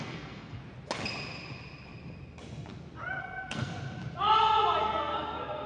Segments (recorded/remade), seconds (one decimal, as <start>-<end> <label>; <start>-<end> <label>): 0.0-0.6 remade; 0.6-3.2 recorded; 3.2-3.7 remade; 3.7-4.8 recorded; 4.8-5.7 remade